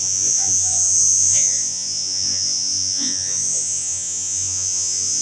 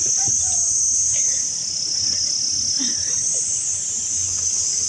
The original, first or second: second